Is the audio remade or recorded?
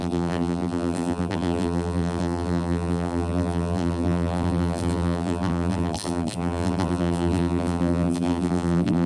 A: remade